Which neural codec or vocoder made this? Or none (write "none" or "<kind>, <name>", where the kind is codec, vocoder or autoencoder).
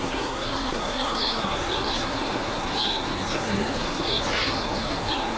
codec, SNAC